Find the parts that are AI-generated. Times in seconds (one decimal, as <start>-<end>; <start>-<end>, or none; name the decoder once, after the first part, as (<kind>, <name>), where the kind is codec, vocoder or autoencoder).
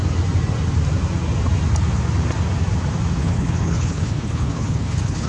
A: 3.2-5.3 (codec, HILCodec)